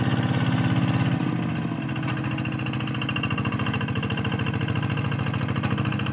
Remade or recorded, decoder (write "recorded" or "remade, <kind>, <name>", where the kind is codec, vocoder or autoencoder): recorded